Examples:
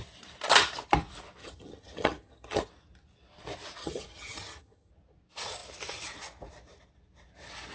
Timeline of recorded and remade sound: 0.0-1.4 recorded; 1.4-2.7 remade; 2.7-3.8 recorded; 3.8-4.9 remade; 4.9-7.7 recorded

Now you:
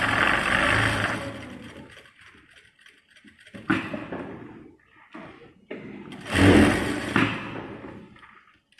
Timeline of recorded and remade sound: 0.0-8.8 recorded

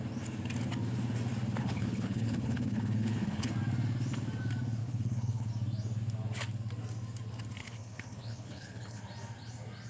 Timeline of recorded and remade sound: 0.0-1.6 recorded; 1.6-3.5 remade; 3.5-4.8 recorded; 4.8-5.5 remade; 5.5-7.6 recorded; 7.6-9.0 remade; 9.0-9.9 recorded

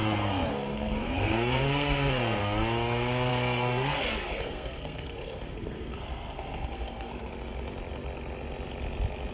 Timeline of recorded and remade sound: 0.0-2.4 remade; 2.4-3.3 recorded; 3.3-7.3 remade; 7.3-9.3 recorded

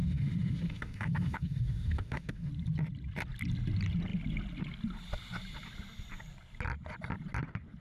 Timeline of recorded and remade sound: 0.0-2.5 remade; 2.5-7.8 recorded

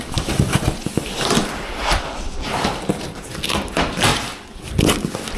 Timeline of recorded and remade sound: 0.0-5.4 recorded

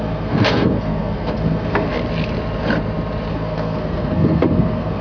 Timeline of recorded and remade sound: 0.0-1.9 remade; 1.9-3.3 recorded; 3.3-5.0 remade